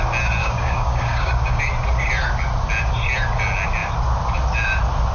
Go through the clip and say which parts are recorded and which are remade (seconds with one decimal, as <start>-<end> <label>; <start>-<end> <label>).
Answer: 0.0-0.4 recorded; 0.4-1.6 remade; 1.6-5.1 recorded